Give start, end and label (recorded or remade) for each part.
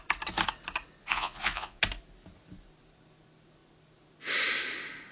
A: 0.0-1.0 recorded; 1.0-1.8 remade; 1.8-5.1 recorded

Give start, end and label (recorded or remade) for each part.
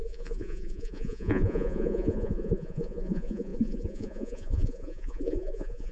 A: 0.0-5.9 remade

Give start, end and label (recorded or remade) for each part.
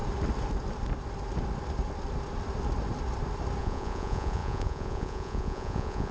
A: 0.0-3.6 recorded; 3.6-6.1 remade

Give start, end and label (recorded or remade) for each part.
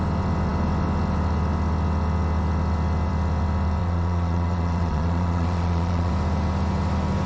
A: 0.0-3.8 recorded; 3.8-6.1 remade; 6.1-7.3 recorded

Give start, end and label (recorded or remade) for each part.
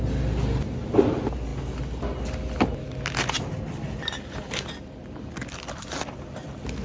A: 0.0-6.8 recorded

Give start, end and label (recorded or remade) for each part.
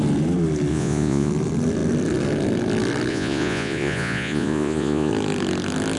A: 0.0-0.7 recorded; 0.7-1.3 remade; 1.3-3.1 recorded; 3.1-5.1 remade; 5.1-6.0 recorded